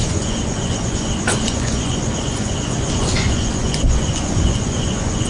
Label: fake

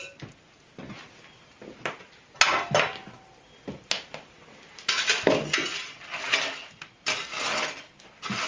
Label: real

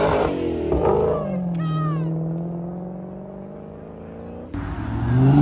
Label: real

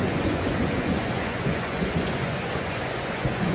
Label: fake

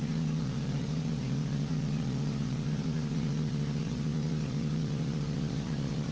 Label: fake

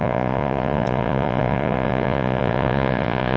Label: fake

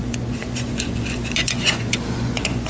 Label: fake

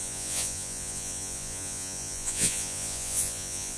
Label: fake